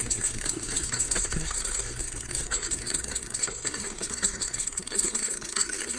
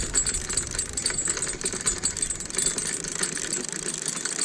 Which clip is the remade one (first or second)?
first